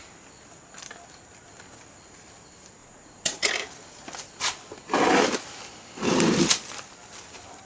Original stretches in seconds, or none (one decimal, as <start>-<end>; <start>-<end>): 0.0-2.8; 3.5-7.7